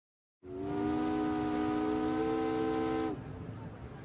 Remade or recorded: recorded